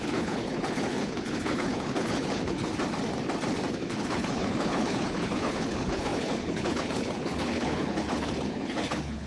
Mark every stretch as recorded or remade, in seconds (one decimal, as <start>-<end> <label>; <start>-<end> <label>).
0.0-2.7 remade; 2.7-3.7 recorded; 3.7-9.3 remade